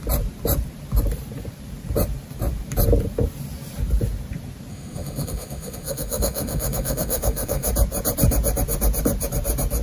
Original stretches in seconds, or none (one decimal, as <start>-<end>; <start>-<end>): 0.0-4.7; 7.7-9.8